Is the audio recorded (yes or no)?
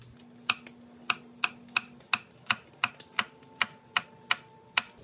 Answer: yes